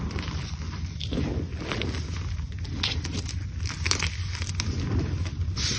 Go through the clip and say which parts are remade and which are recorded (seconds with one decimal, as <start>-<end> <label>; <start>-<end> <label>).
0.0-1.5 remade; 1.5-5.0 recorded; 5.0-5.8 remade